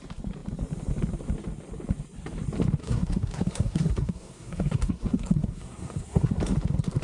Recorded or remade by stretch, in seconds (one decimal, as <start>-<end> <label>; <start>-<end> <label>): 0.0-2.8 recorded; 2.8-6.4 remade; 6.4-7.0 recorded